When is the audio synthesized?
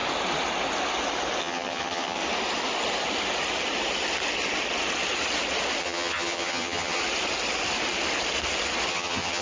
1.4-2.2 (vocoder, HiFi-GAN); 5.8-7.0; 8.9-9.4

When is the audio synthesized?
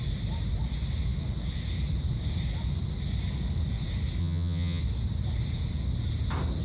4.2-4.8 (vocoder, HiFi-GAN)